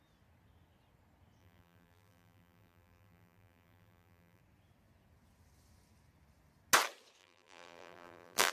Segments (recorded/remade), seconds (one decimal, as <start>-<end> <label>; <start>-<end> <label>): 0.0-1.4 recorded; 1.4-4.4 remade; 4.4-7.2 recorded; 7.2-8.5 remade